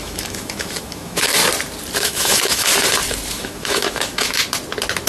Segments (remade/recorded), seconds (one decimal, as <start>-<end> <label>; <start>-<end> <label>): 0.0-1.4 remade; 1.4-2.0 recorded; 2.0-2.7 remade; 2.7-3.3 recorded; 3.3-4.4 remade; 4.4-5.1 recorded

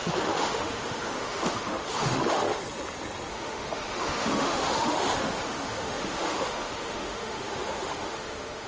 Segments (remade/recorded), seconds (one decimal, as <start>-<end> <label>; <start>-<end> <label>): 0.0-2.6 remade; 2.6-3.3 recorded; 3.3-8.7 remade

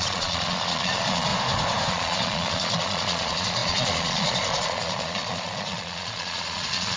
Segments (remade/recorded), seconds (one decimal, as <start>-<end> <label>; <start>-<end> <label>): 0.0-1.3 remade; 1.3-1.9 recorded; 1.9-7.0 remade

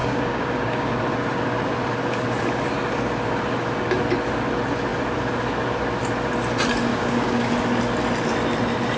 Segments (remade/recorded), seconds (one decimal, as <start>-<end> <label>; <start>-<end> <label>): 0.0-0.9 remade; 0.9-6.9 recorded; 6.9-7.5 remade; 7.5-9.0 recorded

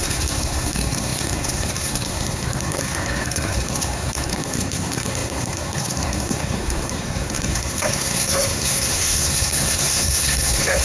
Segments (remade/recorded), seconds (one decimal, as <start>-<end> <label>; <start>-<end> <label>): 0.0-10.8 remade